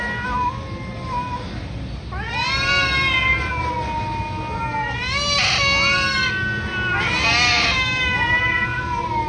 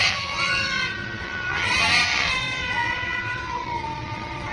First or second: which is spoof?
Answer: second